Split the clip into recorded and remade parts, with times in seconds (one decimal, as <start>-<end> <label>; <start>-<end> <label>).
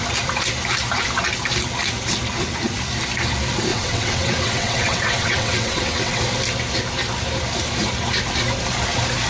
0.0-3.7 recorded; 3.7-6.2 remade; 6.2-9.3 recorded